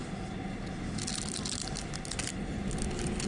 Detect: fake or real real